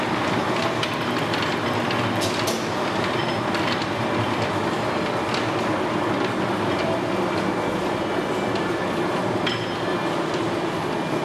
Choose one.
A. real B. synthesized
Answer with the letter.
A